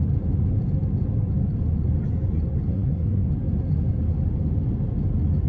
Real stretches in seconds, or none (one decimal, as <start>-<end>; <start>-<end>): 0.0-2.7; 3.3-5.5

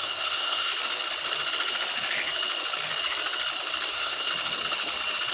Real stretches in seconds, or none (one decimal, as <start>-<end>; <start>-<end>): 0.7-3.9; 4.3-5.3

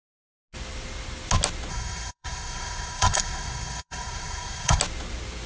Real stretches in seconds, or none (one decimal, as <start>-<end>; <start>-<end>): 0.0-1.7; 4.8-5.5

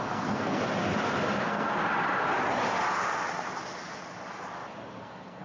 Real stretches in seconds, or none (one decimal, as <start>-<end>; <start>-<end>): 0.6-1.4; 1.8-5.0